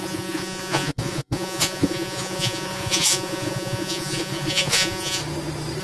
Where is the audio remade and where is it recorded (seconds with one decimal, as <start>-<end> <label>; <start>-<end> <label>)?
0.0-5.2 remade; 5.2-5.8 recorded